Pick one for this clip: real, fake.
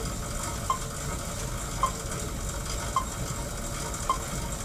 real